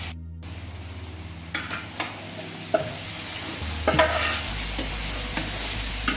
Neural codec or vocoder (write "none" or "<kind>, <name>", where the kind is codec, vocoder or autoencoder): none